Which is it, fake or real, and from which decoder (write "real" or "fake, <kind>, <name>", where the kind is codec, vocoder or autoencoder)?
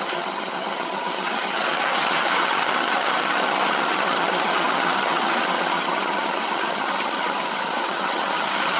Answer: fake, vocoder, HiFi-GAN